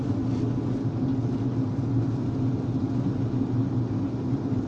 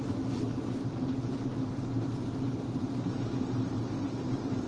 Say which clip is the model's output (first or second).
second